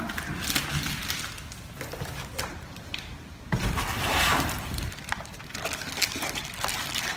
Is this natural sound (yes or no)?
yes